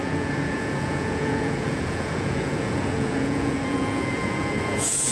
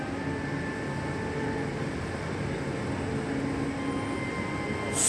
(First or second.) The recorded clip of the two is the second